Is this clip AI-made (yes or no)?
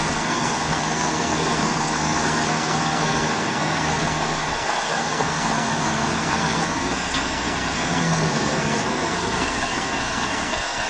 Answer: yes